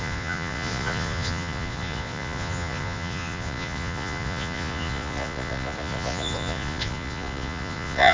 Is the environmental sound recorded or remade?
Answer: remade